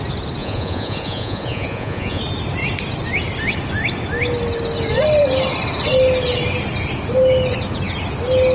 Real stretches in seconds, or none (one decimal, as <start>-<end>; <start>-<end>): 0.0-0.4; 2.2-8.5